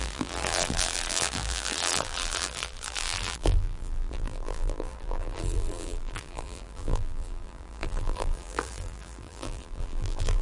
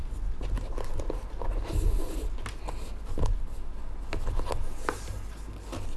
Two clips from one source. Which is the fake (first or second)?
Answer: first